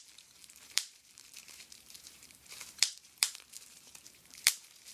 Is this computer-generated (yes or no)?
yes